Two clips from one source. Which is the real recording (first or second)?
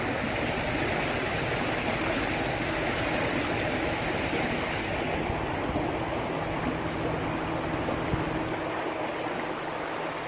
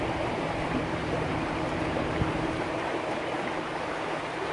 first